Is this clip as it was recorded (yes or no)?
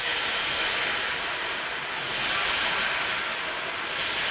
yes